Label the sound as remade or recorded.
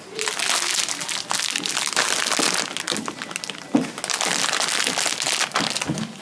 recorded